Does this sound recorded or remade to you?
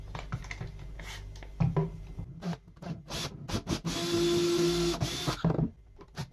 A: recorded